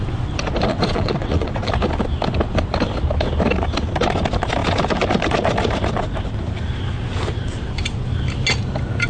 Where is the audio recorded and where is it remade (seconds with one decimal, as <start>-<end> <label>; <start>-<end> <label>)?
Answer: 0.0-0.7 recorded; 0.7-1.7 remade; 1.7-9.1 recorded